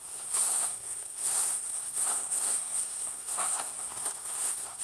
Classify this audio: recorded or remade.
remade